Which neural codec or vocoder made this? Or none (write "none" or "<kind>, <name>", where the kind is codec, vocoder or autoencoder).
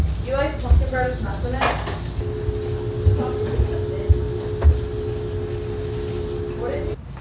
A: none